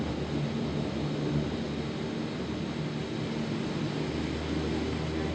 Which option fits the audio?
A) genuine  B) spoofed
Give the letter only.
A